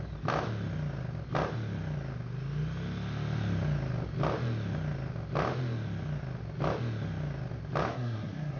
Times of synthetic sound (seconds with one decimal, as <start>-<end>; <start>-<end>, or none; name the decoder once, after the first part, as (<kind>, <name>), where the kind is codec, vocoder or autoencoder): 7.9-8.6 (codec, SNAC)

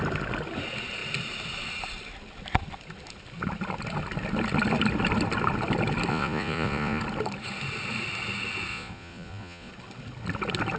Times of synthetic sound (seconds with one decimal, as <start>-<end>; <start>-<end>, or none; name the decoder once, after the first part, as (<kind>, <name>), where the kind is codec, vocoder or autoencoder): 6.1-7.0 (vocoder, Vocos); 8.7-9.7

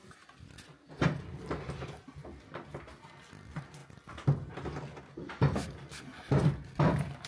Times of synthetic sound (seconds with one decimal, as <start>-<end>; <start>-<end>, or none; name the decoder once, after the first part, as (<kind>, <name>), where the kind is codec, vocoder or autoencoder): none

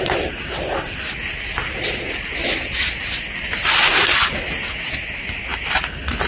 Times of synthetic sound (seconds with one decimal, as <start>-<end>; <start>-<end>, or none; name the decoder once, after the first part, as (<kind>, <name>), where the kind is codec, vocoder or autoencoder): none

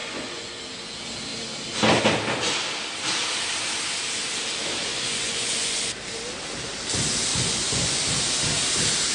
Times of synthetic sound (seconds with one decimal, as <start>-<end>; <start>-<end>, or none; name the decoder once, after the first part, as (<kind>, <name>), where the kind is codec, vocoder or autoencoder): 0.0-0.6 (vocoder, Vocos); 4.8-5.9; 7.3-8.0